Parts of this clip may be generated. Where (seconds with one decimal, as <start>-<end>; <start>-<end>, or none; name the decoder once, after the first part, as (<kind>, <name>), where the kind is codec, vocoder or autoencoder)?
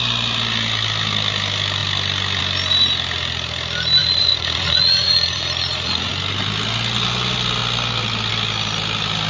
4.0-6.1 (vocoder, Vocos)